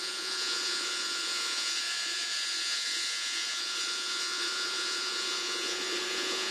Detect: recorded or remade remade